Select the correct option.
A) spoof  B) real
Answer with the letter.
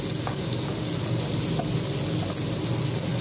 B